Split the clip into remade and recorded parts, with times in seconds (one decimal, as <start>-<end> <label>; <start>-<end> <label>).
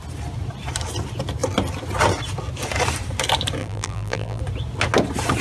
0.0-3.6 recorded; 3.6-4.4 remade; 4.4-5.4 recorded